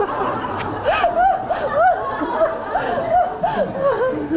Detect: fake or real real